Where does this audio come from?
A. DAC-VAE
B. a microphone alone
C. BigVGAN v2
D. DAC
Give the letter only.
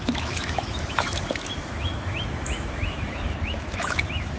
A